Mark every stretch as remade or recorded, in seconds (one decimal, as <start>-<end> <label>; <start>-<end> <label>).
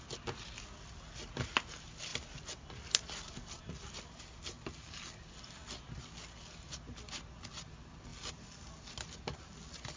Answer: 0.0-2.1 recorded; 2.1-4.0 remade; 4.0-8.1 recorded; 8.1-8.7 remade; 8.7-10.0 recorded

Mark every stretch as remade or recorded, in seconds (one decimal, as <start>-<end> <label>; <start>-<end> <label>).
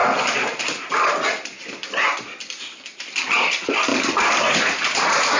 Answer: 0.0-0.9 recorded; 0.9-1.8 remade; 1.8-3.4 recorded; 3.4-5.4 remade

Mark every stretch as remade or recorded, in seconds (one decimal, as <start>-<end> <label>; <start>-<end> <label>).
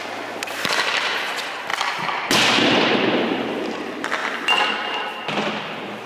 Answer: 0.0-4.2 recorded; 4.2-5.0 remade; 5.0-6.1 recorded